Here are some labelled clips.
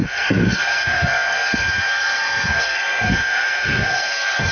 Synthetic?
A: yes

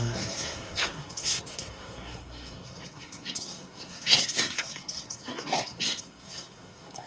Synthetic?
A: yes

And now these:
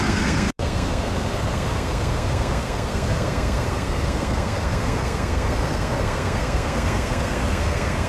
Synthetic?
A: yes